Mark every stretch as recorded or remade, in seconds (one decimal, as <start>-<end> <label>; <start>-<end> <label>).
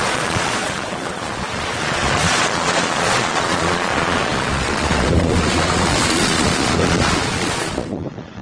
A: 0.0-8.4 remade